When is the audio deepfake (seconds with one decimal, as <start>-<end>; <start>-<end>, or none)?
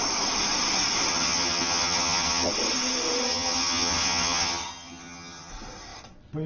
1.1-2.5; 3.3-5.5